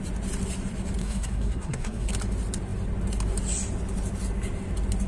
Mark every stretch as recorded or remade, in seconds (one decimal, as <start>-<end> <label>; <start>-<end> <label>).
0.0-1.0 recorded; 1.0-2.1 remade; 2.1-5.1 recorded